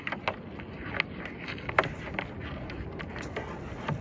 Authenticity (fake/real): real